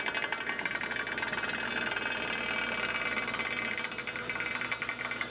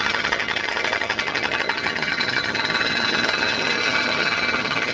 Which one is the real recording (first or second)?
first